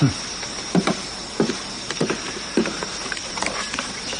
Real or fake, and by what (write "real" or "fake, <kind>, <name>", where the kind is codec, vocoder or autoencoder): fake, vocoder, BigVGAN v2